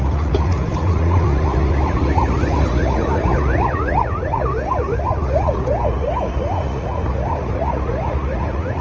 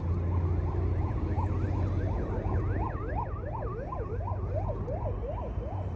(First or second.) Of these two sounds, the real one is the second